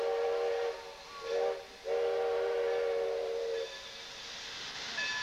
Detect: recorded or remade recorded